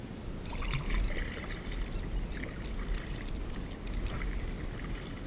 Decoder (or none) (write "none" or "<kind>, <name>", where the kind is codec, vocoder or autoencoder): none